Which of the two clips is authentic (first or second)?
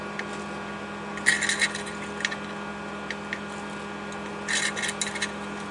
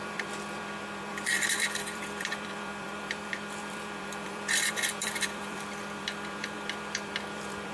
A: first